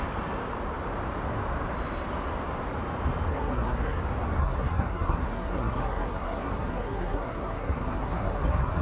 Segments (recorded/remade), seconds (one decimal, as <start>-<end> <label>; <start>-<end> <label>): 0.0-3.3 recorded; 3.3-4.0 remade; 4.0-4.4 recorded; 4.4-8.8 remade